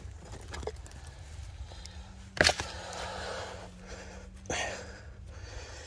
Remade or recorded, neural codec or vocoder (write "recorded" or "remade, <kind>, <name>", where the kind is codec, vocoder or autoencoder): recorded